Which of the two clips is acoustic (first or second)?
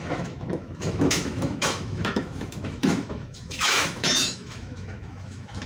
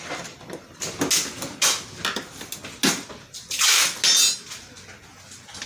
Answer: second